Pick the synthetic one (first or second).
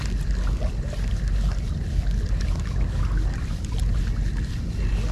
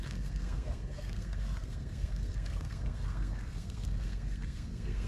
second